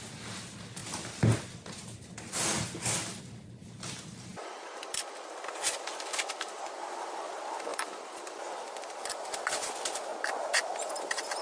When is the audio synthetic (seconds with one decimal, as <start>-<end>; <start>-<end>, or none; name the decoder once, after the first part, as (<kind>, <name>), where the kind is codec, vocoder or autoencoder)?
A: none